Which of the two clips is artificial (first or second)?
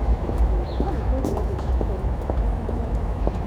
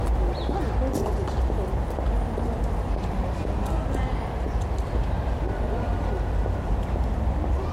first